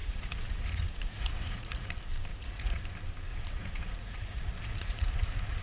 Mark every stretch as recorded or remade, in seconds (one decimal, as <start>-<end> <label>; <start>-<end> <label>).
0.0-1.9 remade; 1.9-2.3 recorded; 2.3-2.8 remade; 2.8-3.3 recorded; 3.3-5.6 remade